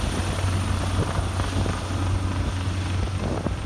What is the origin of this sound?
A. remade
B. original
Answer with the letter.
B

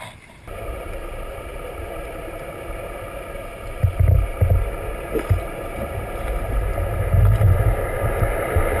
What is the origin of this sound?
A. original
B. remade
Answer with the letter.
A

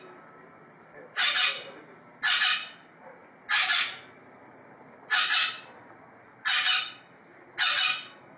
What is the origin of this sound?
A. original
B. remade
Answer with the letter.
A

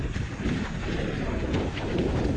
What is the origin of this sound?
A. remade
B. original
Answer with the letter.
A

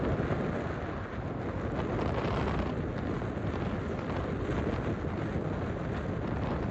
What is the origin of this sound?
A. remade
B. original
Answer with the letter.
B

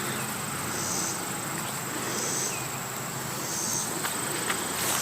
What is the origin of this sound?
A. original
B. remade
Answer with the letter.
A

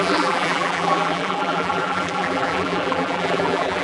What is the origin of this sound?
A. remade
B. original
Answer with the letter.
A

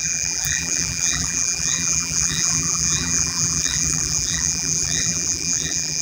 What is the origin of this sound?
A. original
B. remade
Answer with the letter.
B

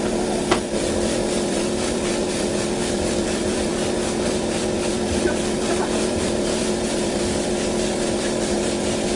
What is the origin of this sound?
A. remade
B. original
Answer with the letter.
A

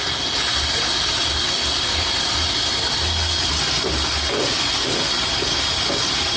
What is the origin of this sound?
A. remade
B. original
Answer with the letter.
B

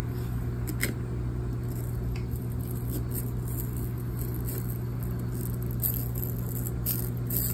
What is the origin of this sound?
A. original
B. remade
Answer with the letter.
A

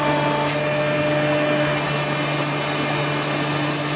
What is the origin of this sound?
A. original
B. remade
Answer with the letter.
A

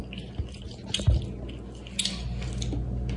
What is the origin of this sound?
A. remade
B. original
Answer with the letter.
B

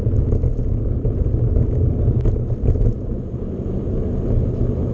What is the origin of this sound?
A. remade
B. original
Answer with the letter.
B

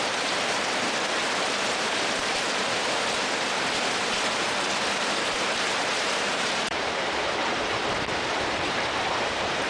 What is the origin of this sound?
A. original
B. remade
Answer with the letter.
B